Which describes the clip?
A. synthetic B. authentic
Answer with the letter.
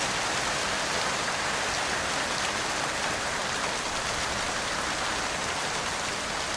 B